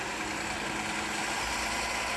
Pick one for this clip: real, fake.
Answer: real